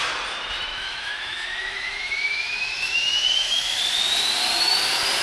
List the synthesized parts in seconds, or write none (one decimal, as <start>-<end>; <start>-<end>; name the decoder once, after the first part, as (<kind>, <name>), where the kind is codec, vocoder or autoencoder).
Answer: 0.7-3.8 (autoencoder, DAC-VAE)